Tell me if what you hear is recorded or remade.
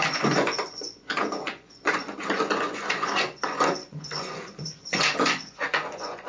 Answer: remade